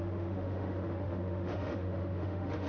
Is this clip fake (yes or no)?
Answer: yes